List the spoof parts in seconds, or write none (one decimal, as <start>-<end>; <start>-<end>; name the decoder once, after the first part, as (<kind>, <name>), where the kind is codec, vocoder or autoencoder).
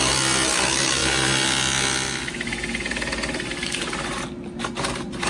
none